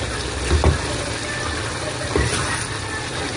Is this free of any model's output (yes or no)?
yes